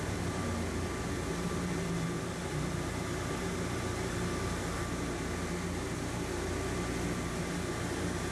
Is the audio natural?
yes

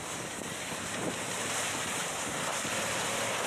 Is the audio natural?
no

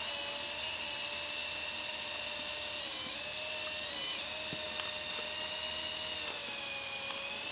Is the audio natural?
yes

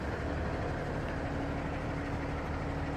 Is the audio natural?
yes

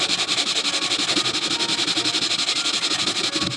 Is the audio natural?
yes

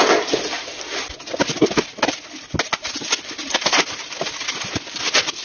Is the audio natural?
yes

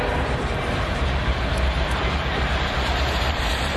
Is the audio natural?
no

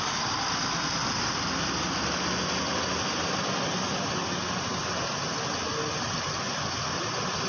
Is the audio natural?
yes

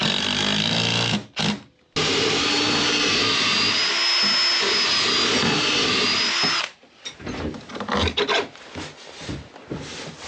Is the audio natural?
yes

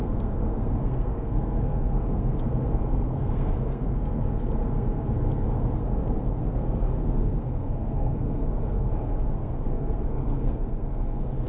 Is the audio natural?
no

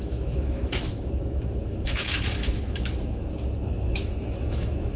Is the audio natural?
no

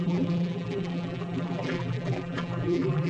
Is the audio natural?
no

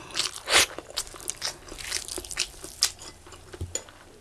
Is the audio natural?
yes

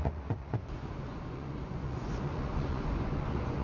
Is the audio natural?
no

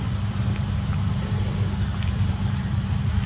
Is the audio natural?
yes